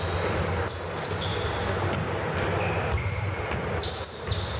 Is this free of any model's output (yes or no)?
yes